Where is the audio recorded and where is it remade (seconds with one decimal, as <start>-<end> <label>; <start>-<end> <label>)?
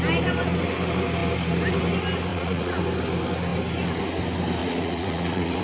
0.0-2.3 recorded; 2.3-2.8 remade; 2.8-4.6 recorded; 4.6-5.6 remade